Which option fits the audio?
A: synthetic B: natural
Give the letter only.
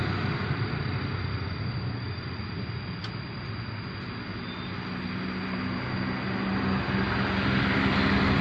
B